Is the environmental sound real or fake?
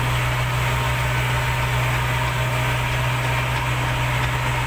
real